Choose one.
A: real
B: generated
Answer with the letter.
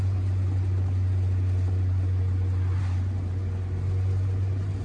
A